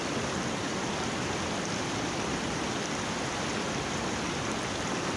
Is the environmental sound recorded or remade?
recorded